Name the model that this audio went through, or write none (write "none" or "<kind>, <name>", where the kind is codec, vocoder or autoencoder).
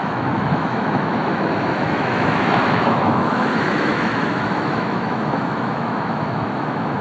autoencoder, DAC-VAE